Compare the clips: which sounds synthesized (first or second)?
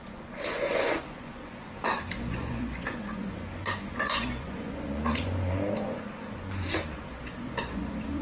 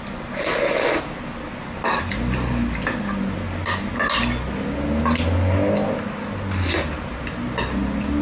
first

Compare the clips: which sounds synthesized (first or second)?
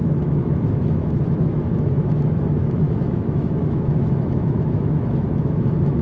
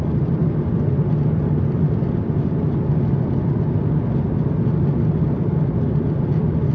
first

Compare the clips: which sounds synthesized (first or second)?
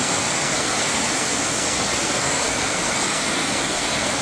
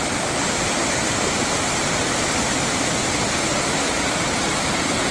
first